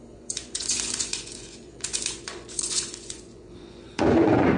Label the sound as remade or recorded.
remade